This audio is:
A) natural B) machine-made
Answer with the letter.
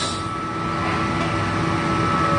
A